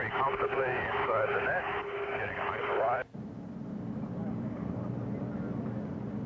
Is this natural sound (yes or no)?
yes